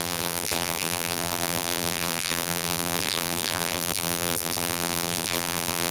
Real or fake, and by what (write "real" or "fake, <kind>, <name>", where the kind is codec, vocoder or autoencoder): fake, vocoder, BigVGAN v2